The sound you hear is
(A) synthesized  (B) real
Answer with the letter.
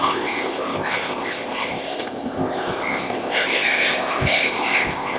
A